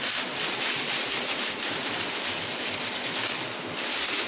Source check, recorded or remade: recorded